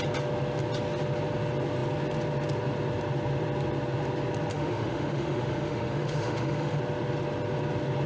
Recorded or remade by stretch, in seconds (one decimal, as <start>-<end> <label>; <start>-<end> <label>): 0.0-4.5 recorded; 4.5-6.8 remade; 6.8-8.1 recorded